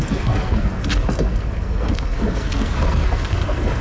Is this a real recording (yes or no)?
no